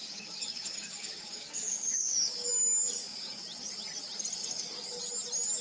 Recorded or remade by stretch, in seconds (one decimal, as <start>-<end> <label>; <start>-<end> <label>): 0.0-3.4 remade; 3.4-4.4 recorded; 4.4-5.0 remade; 5.0-5.6 recorded